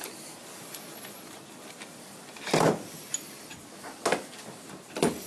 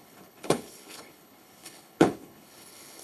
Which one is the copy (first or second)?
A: second